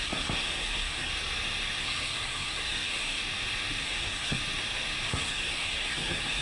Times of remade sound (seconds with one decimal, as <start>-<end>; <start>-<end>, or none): 0.0-1.1; 1.8-3.2; 3.8-4.4; 5.1-6.4